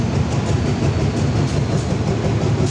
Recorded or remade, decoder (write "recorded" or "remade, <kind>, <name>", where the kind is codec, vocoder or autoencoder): recorded